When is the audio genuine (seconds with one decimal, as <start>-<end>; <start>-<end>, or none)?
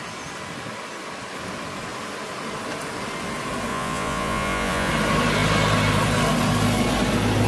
0.0-3.7; 4.9-7.5